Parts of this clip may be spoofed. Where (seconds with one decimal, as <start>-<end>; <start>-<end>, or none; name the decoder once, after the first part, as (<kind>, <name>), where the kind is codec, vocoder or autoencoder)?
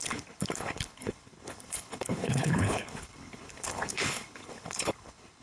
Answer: 0.0-5.4 (codec, HILCodec)